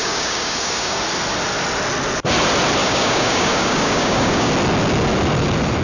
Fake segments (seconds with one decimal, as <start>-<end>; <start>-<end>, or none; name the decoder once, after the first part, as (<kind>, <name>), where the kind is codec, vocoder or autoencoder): 0.0-1.0 (codec, DAC); 2.8-4.5